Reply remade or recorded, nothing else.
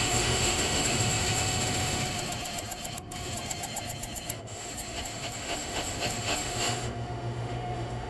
remade